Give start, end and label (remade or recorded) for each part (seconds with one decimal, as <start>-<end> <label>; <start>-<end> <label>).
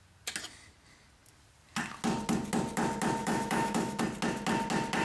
0.0-3.2 recorded; 3.2-4.0 remade; 4.0-5.0 recorded